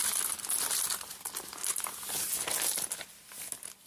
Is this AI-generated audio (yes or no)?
no